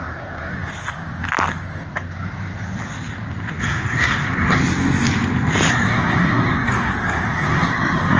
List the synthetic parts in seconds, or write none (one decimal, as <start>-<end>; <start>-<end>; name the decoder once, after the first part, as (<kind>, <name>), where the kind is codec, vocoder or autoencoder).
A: 0.0-0.7 (codec, SNAC); 3.6-4.6; 5.7-8.2